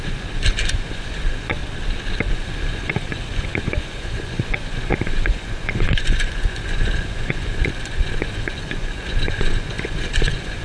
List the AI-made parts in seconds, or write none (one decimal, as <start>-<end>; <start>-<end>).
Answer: 0.0-1.6; 2.3-10.6